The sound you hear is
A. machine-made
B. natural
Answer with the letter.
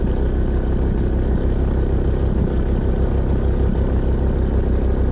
B